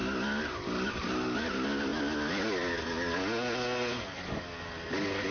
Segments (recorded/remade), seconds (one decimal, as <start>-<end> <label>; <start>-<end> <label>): 0.0-5.3 recorded